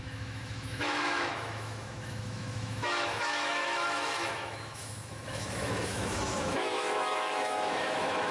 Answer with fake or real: fake